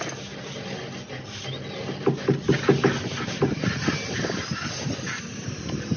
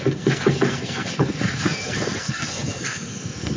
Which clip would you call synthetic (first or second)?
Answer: second